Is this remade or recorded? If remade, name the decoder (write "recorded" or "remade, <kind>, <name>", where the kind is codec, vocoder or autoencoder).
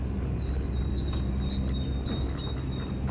recorded